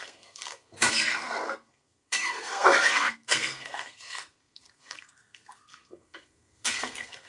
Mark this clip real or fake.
fake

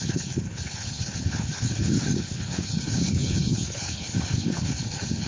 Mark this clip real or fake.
fake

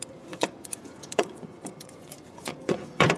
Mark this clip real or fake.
fake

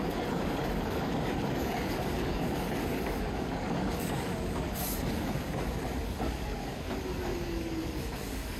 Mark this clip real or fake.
fake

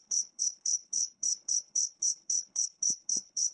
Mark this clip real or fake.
fake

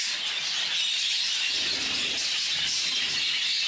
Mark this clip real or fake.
real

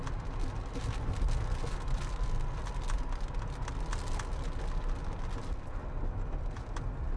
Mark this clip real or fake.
real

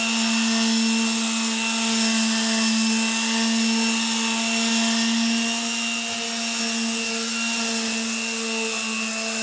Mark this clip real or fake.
real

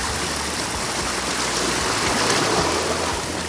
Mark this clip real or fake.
real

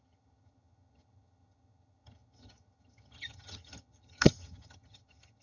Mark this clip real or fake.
fake